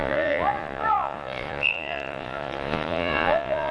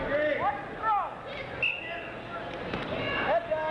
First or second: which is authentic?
second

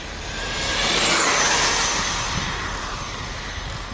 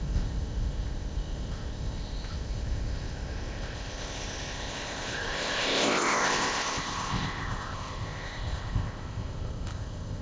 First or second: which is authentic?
first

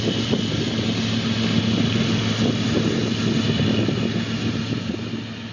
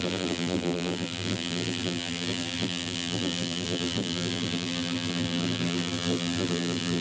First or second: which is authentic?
first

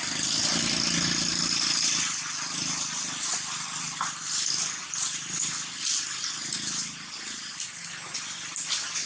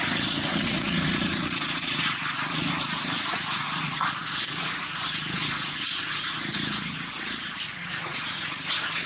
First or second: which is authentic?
first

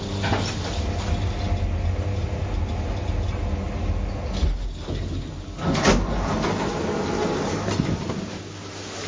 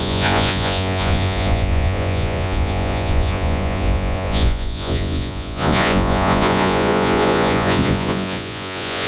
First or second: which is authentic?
first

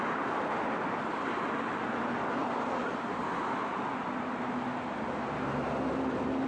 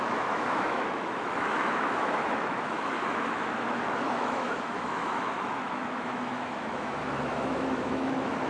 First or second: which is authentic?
first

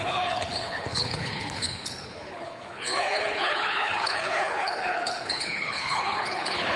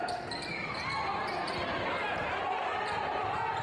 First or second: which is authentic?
second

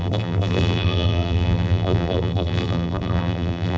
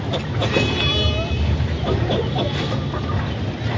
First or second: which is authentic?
second